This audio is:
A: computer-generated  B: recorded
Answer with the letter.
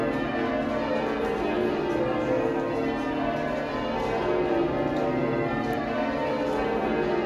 B